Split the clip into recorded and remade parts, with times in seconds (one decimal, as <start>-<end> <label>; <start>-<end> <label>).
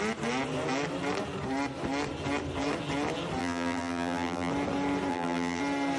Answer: 0.0-3.4 recorded; 3.4-4.5 remade; 4.5-5.1 recorded; 5.1-5.6 remade; 5.6-6.0 recorded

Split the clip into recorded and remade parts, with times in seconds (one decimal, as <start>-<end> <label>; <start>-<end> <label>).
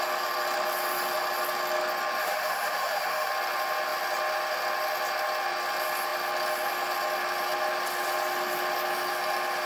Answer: 0.0-2.2 recorded; 2.2-3.3 remade; 3.3-9.7 recorded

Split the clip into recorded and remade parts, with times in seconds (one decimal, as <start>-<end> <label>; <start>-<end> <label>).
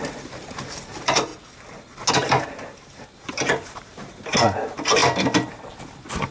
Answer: 0.0-1.3 remade; 1.3-2.1 recorded; 2.1-5.0 remade; 5.0-6.3 recorded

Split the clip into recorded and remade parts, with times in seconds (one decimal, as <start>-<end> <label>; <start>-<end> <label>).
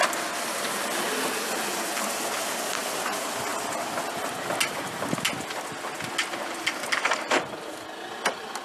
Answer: 0.0-8.6 recorded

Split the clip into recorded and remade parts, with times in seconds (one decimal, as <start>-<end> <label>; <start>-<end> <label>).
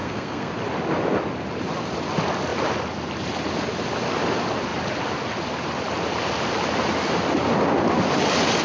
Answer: 0.0-0.5 remade; 0.5-8.6 recorded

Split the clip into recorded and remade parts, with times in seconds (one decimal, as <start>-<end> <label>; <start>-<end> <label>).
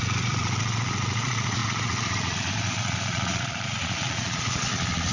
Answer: 0.0-5.1 remade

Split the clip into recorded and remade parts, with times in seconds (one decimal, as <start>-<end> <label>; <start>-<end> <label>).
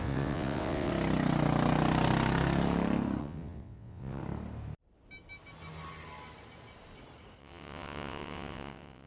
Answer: 0.0-0.9 remade; 0.9-3.2 recorded; 3.2-4.2 remade; 4.2-7.4 recorded; 7.4-9.1 remade